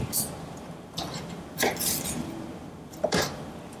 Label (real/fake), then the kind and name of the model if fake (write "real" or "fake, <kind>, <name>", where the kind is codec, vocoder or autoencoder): fake, vocoder, BigVGAN v2